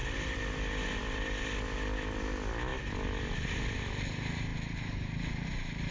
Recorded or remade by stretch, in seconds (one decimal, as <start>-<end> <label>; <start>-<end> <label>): 0.0-5.9 recorded